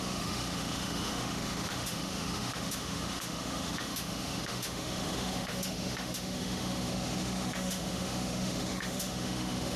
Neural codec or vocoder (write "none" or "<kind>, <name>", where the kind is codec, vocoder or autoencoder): autoencoder, DAC-VAE